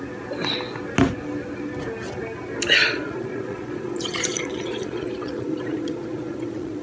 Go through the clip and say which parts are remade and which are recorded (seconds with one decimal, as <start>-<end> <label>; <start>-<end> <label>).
0.0-2.8 recorded; 2.8-6.8 remade